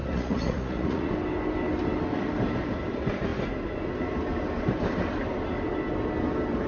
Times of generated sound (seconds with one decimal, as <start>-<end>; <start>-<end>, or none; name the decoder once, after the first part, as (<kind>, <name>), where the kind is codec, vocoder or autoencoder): 0.0-1.1 (vocoder, Vocos)